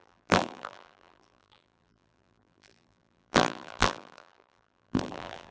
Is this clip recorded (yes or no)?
no